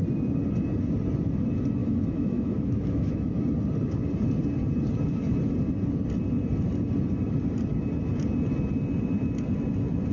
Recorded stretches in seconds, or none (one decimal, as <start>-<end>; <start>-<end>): 0.0-1.8; 3.4-10.1

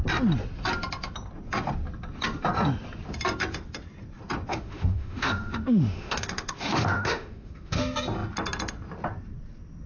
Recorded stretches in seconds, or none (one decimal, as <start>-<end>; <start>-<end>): 0.0-4.5; 7.8-9.9

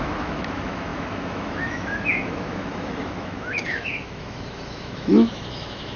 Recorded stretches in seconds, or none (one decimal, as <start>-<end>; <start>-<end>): none

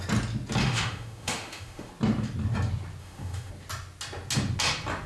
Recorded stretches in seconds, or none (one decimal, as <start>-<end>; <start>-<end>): 0.0-0.6; 1.9-3.0; 3.5-5.1

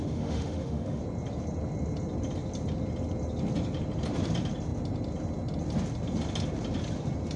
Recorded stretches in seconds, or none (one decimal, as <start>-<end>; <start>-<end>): 1.0-7.4

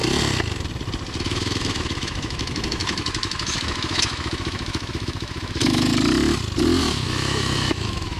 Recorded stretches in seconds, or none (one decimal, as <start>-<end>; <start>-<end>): 0.0-1.2; 5.9-6.8